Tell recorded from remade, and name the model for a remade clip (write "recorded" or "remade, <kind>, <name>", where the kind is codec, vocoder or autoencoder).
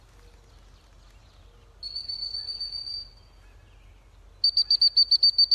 recorded